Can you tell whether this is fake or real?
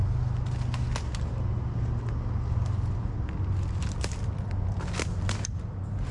real